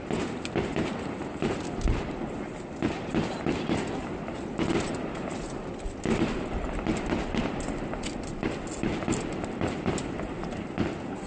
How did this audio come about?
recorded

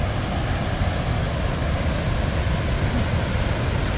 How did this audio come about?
recorded